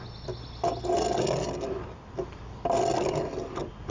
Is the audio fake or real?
real